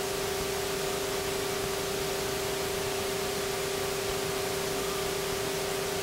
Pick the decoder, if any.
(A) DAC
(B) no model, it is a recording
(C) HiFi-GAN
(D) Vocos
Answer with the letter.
B